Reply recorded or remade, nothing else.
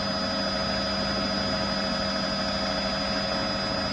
recorded